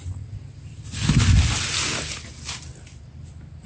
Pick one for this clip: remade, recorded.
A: recorded